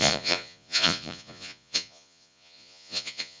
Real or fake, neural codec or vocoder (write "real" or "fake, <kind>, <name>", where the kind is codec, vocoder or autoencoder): fake, vocoder, Vocos